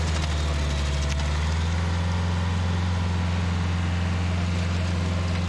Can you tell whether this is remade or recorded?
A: recorded